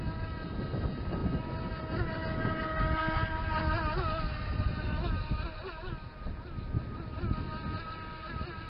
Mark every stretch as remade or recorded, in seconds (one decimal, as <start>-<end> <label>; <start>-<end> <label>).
0.0-8.7 recorded